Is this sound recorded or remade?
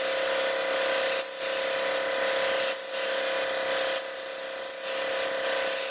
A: recorded